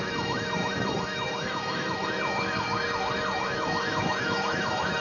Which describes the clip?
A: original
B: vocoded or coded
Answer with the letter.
B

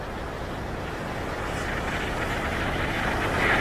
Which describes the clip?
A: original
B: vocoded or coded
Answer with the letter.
A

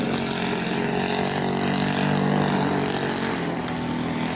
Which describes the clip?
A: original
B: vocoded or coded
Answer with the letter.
A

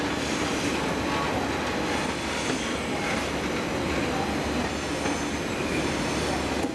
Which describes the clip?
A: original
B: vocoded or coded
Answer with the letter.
A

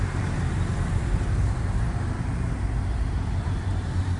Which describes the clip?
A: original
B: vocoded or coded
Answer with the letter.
B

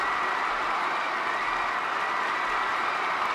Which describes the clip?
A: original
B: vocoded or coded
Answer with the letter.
A